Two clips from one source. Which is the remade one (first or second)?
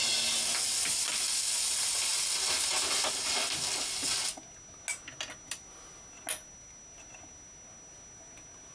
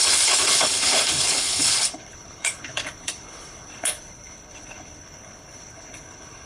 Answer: second